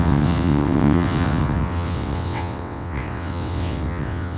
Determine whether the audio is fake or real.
fake